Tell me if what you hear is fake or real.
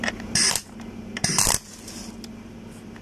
real